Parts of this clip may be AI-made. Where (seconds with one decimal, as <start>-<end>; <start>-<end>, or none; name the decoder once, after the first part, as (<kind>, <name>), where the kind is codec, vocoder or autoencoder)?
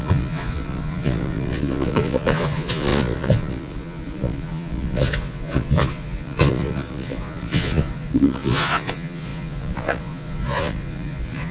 0.0-11.5 (vocoder, Vocos)